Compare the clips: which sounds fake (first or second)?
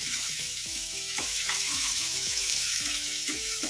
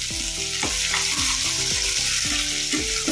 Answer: first